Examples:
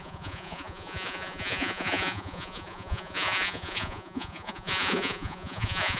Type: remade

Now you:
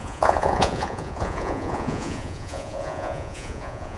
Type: remade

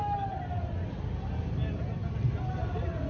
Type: recorded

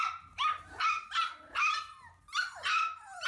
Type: recorded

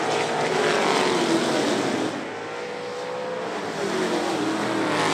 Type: recorded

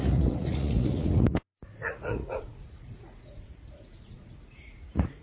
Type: remade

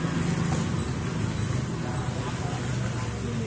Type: recorded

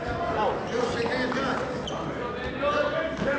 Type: recorded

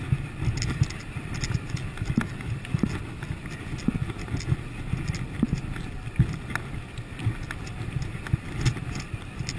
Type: recorded